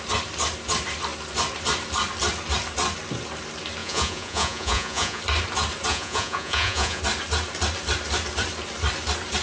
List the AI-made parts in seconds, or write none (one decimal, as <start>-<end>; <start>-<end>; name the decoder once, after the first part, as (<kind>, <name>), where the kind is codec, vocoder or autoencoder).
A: 3.8-5.2 (vocoder, Vocos); 5.9-7.0